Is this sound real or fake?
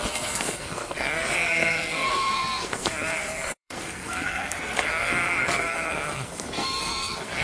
fake